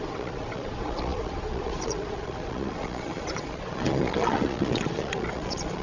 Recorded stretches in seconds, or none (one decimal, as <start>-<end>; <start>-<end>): none